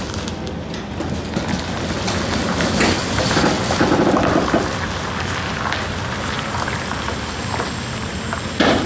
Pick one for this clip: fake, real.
real